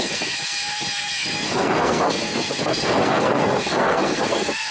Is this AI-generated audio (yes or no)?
yes